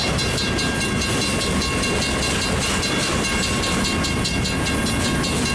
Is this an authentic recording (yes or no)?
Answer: yes